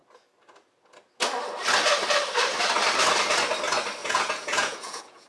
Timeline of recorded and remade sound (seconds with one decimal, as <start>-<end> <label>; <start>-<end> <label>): 0.0-4.0 recorded; 4.0-5.3 remade